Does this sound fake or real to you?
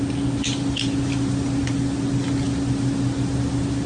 real